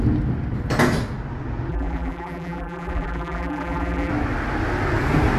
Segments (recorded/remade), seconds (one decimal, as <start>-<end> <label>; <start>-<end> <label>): 0.0-1.7 recorded; 1.7-4.1 remade; 4.1-5.4 recorded